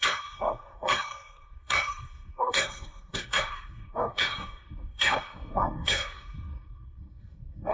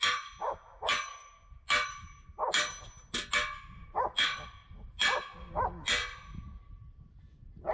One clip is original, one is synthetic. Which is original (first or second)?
second